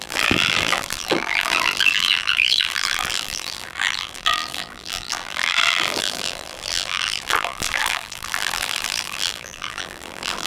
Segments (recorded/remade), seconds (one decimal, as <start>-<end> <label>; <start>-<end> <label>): 0.0-10.5 remade